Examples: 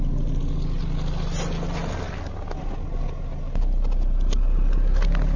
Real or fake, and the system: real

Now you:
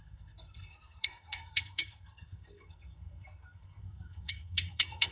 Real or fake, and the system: fake, codec, SNAC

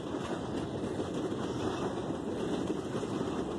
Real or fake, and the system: real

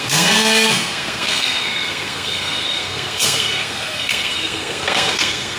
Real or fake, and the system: fake, codec, SNAC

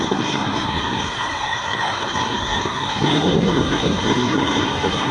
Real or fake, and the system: fake, codec, SNAC